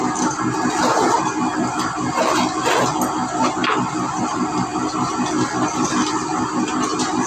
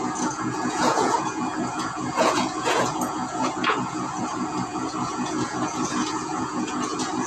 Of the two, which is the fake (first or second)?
second